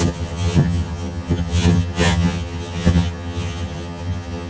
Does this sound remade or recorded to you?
remade